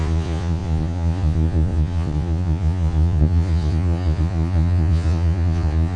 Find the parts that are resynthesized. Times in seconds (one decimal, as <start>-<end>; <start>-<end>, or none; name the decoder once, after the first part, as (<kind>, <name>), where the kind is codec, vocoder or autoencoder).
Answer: 0.0-6.0 (vocoder, Vocos)